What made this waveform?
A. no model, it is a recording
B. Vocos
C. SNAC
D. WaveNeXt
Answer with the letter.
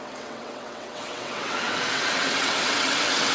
D